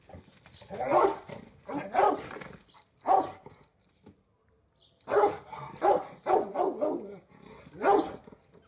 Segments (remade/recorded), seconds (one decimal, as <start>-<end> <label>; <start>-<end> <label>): 0.0-8.7 recorded